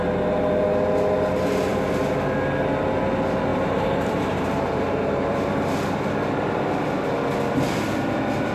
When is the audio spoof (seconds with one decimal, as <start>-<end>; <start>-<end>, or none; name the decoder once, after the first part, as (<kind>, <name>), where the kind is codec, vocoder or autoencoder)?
3.5-5.7 (vocoder, BigVGAN v2)